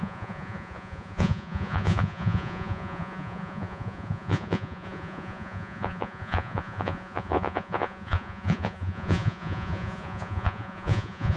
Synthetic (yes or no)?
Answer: yes